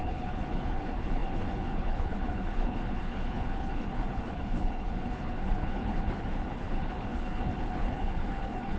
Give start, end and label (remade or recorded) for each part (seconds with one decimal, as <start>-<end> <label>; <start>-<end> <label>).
0.0-8.8 remade